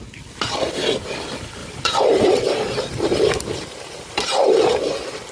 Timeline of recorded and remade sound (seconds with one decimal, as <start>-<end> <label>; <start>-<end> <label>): 0.0-1.6 recorded; 1.6-4.8 remade; 4.8-5.3 recorded